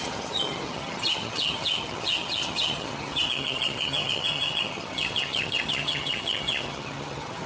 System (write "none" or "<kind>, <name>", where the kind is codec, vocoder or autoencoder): vocoder, HiFi-GAN